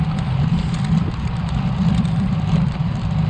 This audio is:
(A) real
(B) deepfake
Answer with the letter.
B